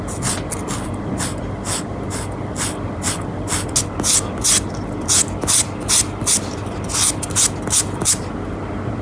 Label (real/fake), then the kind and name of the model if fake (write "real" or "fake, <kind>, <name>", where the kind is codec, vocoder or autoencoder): real